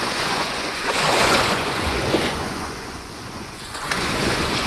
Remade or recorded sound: remade